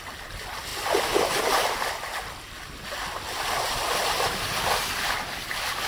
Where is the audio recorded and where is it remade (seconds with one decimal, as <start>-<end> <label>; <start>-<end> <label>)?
0.0-5.9 recorded

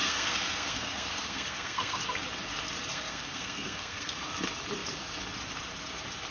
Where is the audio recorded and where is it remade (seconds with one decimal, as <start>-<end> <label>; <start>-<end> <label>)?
0.0-2.0 remade; 2.0-2.9 recorded; 2.9-4.2 remade; 4.2-6.3 recorded

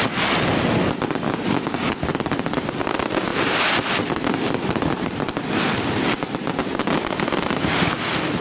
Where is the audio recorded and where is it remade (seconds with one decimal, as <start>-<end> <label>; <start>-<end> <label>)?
0.0-3.3 recorded; 3.3-4.2 remade; 4.2-8.4 recorded